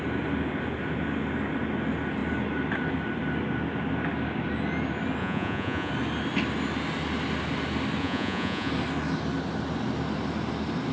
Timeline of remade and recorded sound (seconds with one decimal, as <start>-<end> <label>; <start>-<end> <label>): 0.0-5.2 recorded; 5.2-5.9 remade; 5.9-8.0 recorded; 8.0-8.7 remade; 8.7-10.9 recorded